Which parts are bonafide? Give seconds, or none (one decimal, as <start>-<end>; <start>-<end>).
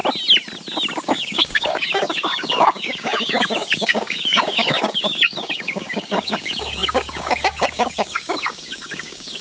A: 0.0-1.0